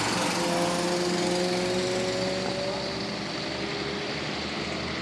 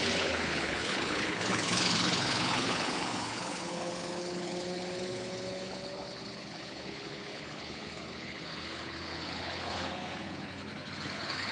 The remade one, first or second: second